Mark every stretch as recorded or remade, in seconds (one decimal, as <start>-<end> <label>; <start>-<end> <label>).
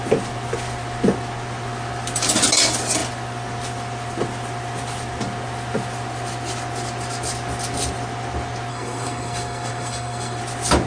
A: 0.0-8.7 recorded; 8.7-10.4 remade; 10.4-10.9 recorded